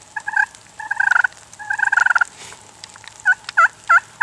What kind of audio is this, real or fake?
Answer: real